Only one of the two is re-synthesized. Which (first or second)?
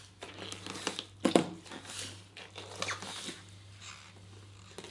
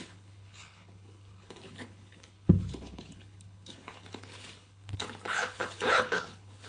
second